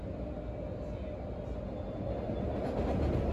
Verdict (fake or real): real